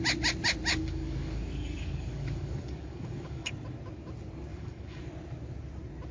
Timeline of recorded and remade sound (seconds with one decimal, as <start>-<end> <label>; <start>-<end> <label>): 0.0-0.7 recorded; 0.7-3.5 remade; 3.5-4.5 recorded; 4.5-5.0 remade; 5.0-6.1 recorded